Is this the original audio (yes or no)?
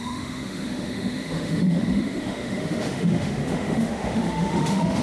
no